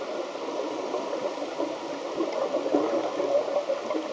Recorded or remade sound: recorded